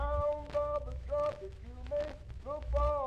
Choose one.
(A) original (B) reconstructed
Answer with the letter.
B